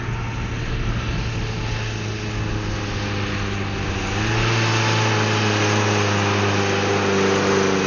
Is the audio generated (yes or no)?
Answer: no